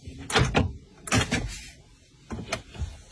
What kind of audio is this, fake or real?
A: real